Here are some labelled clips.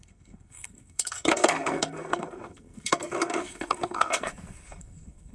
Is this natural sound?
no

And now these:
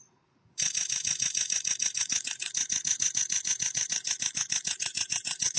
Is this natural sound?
no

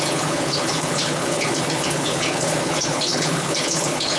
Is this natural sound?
no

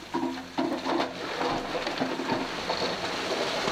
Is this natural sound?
yes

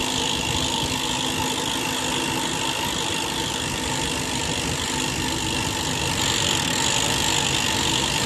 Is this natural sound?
yes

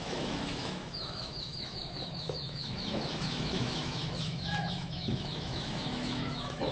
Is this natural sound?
no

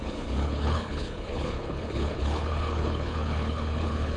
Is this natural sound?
no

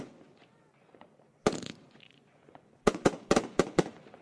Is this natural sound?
no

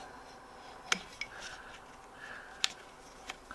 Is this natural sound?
yes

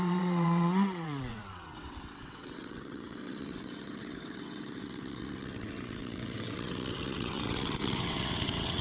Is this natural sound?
no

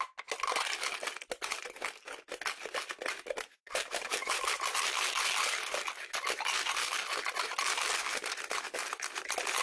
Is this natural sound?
yes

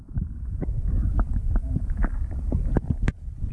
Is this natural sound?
yes